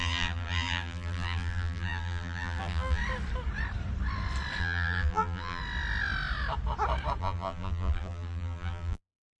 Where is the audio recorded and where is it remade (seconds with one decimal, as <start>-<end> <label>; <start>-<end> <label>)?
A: 0.0-3.0 remade; 3.0-4.6 recorded; 4.6-5.6 remade; 5.6-7.2 recorded; 7.2-9.4 remade